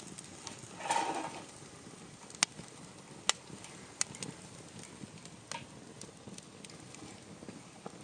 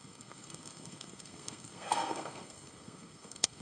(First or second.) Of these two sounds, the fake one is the second